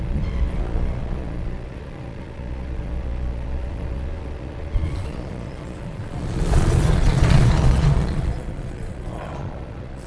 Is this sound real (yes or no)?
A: no